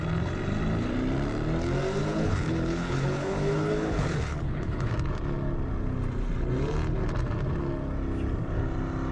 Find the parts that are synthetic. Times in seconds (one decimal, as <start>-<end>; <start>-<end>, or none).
2.0-4.9